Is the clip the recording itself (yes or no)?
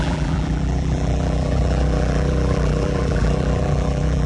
no